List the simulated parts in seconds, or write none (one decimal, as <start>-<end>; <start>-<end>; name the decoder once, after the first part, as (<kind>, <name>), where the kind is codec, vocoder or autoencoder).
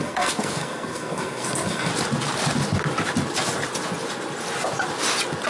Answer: 0.0-1.9 (codec, SNAC)